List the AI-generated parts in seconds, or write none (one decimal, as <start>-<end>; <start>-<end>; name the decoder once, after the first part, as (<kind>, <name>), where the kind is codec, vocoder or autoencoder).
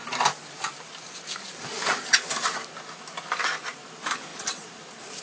none